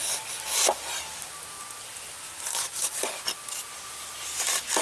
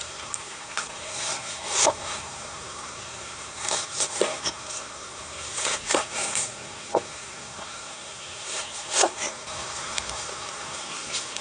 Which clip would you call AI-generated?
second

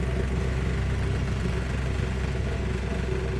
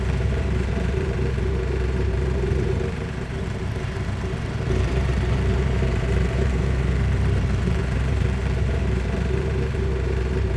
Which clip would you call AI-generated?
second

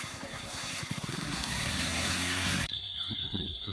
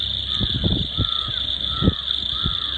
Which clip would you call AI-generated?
first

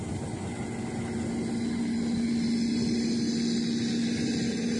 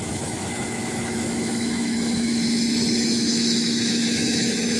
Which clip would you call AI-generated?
second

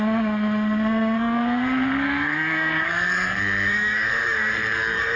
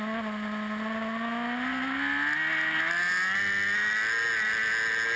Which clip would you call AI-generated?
first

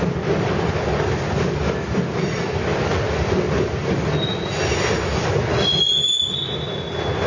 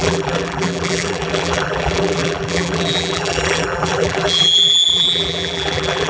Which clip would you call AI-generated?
second